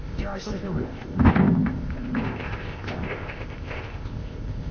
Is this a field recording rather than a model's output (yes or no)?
no